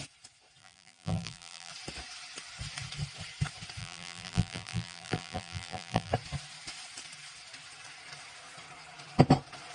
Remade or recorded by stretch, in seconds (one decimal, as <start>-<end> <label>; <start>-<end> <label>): 0.0-0.6 recorded; 0.6-1.7 remade; 1.7-3.8 recorded; 3.8-6.1 remade; 6.1-9.7 recorded